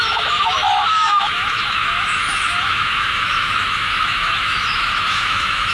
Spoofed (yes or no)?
yes